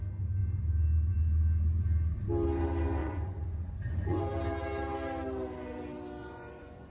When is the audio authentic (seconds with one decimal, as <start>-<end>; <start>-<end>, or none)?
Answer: 0.0-3.0; 4.2-6.2